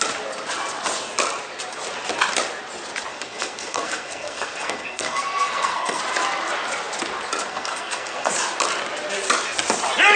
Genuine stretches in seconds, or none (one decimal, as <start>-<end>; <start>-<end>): 0.0-3.1; 6.0-7.5; 8.3-10.2